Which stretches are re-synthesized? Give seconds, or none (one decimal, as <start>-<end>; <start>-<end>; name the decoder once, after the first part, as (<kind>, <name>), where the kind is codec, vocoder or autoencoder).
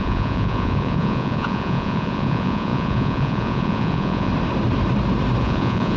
0.0-4.3 (vocoder, Vocos); 5.4-6.0